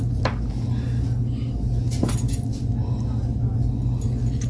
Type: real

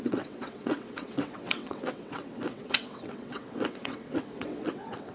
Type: fake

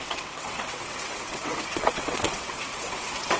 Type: fake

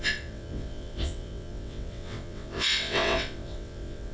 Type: fake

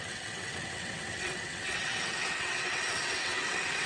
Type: fake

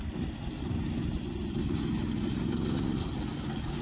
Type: real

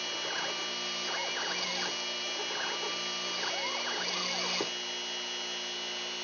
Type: real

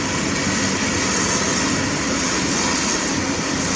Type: real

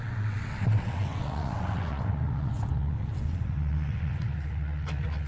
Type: fake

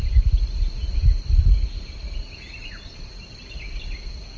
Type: real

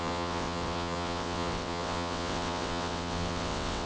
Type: fake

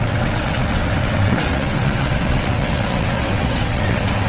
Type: fake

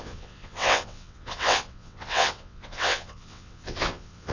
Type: fake